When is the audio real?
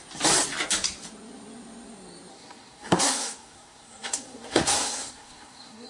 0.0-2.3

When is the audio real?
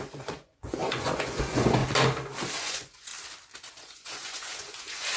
1.8-2.5; 3.1-3.7